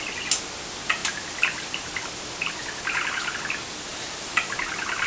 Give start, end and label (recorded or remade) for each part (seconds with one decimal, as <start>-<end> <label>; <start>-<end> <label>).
0.0-1.0 recorded; 1.0-3.3 remade; 3.3-3.9 recorded; 3.9-5.1 remade